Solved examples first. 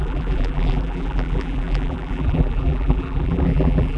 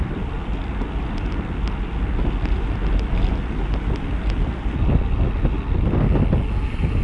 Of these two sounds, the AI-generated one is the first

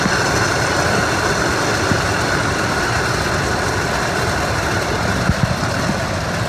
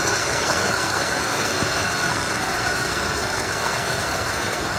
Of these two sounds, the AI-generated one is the second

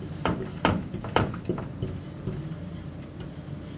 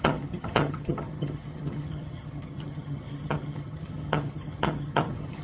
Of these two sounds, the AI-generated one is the second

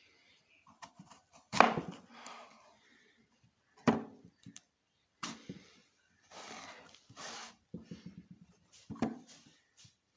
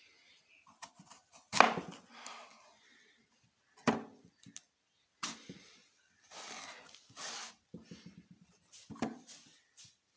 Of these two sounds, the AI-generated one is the first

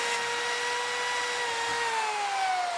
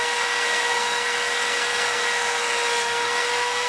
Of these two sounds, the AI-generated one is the second